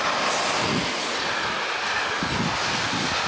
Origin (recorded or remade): recorded